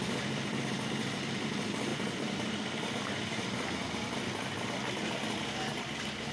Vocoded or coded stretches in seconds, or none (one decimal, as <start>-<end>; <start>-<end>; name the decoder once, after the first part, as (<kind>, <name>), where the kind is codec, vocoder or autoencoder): none